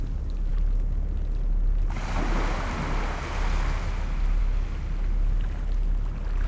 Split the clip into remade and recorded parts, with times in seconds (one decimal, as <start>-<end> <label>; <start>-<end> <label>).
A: 0.0-6.5 recorded